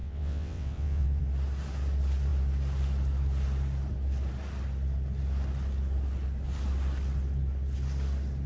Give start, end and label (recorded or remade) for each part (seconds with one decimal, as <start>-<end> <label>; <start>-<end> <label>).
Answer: 0.0-1.2 remade; 1.2-8.5 recorded